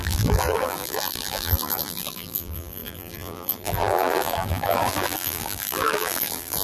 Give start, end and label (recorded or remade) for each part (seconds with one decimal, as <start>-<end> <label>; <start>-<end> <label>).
0.0-6.6 remade